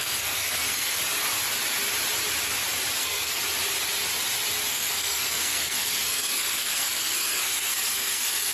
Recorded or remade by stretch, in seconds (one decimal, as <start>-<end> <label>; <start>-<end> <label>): 0.0-1.0 remade; 1.0-3.0 recorded; 3.0-3.4 remade; 3.4-4.7 recorded; 4.7-8.5 remade